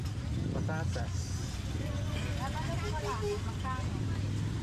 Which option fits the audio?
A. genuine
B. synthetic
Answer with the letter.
A